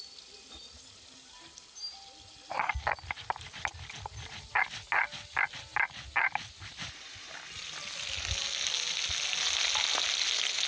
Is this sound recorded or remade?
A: recorded